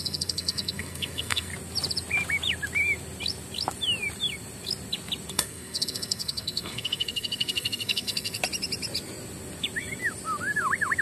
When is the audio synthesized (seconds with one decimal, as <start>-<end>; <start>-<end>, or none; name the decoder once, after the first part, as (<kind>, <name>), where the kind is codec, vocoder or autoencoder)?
0.0-1.5 (codec, SNAC); 5.3-8.4